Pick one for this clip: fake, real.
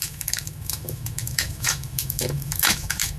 fake